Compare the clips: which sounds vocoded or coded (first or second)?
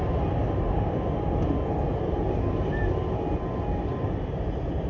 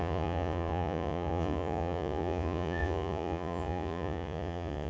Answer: second